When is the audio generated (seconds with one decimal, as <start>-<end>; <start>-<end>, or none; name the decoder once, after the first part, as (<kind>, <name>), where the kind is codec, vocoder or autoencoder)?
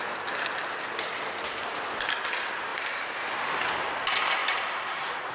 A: 4.4-5.3 (vocoder, BigVGAN v2)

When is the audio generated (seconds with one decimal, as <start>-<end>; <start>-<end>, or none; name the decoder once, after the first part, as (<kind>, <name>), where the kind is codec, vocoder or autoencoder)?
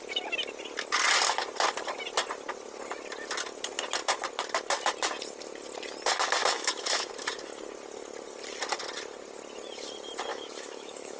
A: 6.4-7.1 (autoencoder, DAC-VAE); 10.3-11.2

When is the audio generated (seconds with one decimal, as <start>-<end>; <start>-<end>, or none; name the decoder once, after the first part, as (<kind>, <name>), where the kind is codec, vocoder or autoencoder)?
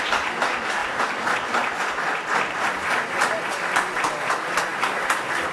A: 4.7-5.5 (vocoder, BigVGAN v2)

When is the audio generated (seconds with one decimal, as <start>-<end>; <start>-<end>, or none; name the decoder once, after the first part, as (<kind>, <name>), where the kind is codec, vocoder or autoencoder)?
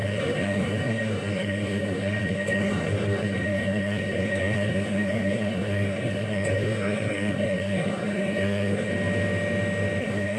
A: 0.0-8.9 (codec, SNAC); 10.0-10.4